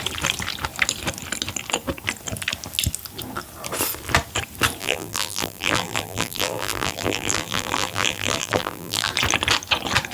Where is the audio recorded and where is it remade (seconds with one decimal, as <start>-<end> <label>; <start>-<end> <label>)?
0.0-4.8 recorded; 4.8-9.1 remade; 9.1-10.1 recorded